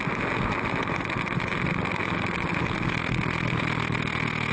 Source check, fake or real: real